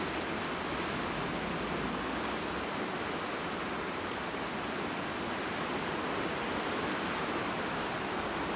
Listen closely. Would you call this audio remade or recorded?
recorded